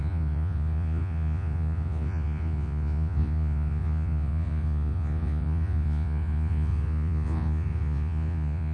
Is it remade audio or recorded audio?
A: remade